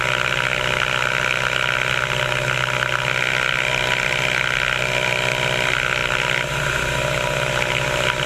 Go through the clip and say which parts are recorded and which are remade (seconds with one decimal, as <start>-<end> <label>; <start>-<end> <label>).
0.0-8.3 recorded